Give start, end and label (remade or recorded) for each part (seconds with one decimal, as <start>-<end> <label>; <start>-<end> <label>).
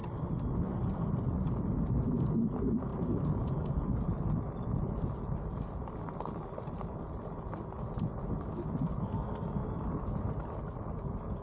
0.0-1.1 remade; 1.1-9.6 recorded; 9.6-10.3 remade; 10.3-11.4 recorded